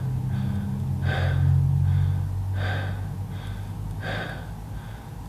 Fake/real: real